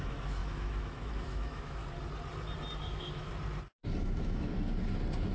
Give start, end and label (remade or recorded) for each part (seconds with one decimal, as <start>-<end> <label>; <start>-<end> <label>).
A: 0.0-1.8 remade; 1.8-2.8 recorded; 2.8-3.3 remade; 3.3-4.0 recorded; 4.0-4.5 remade; 4.5-5.3 recorded